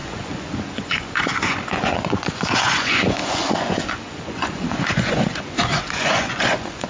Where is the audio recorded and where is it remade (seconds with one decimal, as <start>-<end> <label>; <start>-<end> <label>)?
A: 0.0-6.9 remade